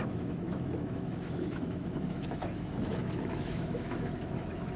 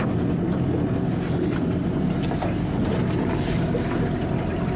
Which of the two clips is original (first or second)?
second